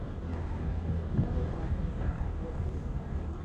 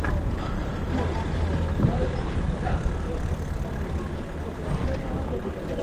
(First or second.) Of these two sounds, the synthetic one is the first